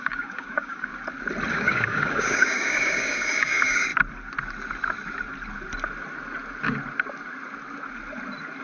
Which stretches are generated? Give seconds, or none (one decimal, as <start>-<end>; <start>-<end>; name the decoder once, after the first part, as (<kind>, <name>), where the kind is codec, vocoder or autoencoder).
0.0-0.9 (codec, DAC); 1.5-3.9